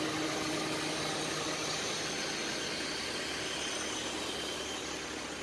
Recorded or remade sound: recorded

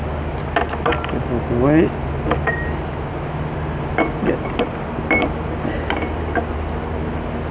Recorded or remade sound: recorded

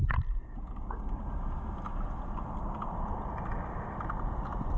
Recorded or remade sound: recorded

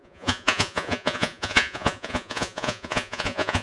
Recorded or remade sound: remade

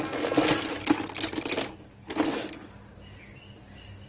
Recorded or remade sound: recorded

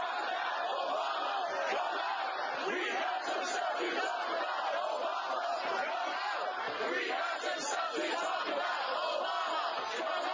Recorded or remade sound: recorded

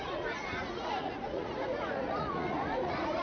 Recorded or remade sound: remade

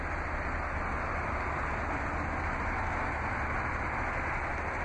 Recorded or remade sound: recorded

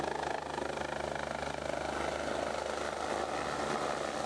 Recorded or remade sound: recorded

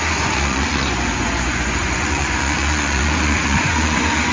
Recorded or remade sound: remade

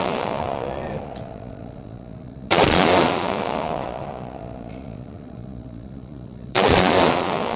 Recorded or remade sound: remade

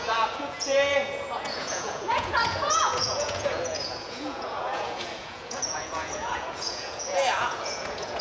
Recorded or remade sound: remade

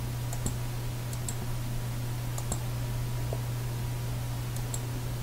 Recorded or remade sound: recorded